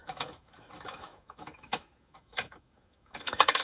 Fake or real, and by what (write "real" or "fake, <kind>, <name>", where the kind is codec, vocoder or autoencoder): fake, autoencoder, DAC-VAE